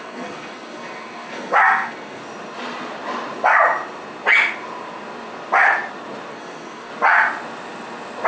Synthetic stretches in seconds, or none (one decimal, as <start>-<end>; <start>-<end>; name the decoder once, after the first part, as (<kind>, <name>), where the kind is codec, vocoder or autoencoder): 0.0-2.2 (codec, SNAC); 6.3-6.9